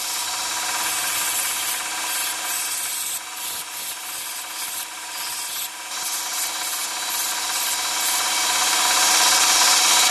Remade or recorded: recorded